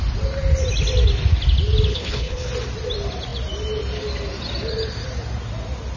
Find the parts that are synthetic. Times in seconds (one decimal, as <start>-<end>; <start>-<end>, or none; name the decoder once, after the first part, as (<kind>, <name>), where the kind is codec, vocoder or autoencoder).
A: 1.9-2.5 (codec, HILCodec)